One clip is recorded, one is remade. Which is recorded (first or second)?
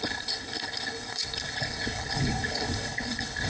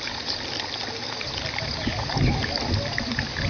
second